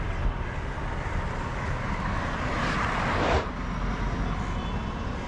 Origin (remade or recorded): recorded